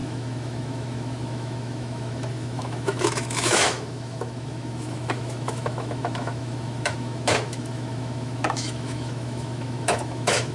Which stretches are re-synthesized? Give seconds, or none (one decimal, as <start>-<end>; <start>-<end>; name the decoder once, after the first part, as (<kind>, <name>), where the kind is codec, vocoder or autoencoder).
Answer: 0.0-10.5 (autoencoder, DAC-VAE)